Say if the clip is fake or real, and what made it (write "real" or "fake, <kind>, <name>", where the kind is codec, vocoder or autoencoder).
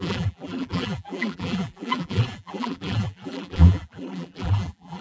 fake, vocoder, BigVGAN v2